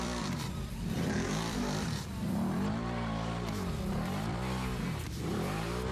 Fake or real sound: fake